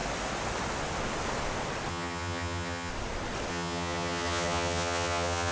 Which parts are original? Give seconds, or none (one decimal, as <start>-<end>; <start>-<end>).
0.0-1.9; 2.9-3.5